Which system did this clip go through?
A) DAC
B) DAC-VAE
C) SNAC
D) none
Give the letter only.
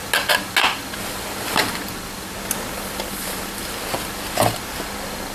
D